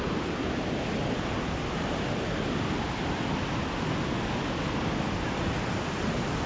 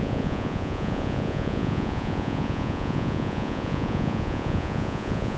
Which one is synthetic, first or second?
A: second